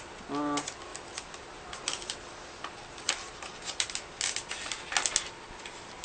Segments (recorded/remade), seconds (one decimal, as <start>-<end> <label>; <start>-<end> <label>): 0.0-0.9 recorded; 0.9-3.1 remade; 3.1-6.0 recorded